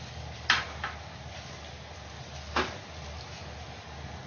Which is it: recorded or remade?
recorded